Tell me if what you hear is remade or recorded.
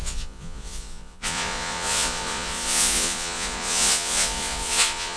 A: remade